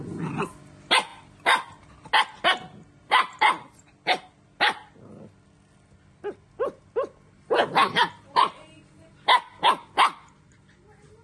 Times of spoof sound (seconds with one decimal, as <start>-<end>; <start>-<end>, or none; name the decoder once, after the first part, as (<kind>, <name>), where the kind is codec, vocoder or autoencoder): 2.7-3.9 (vocoder, BigVGAN v2); 7.6-8.4